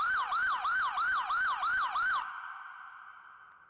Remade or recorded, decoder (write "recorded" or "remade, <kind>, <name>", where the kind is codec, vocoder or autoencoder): recorded